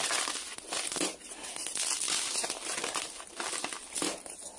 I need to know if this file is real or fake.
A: real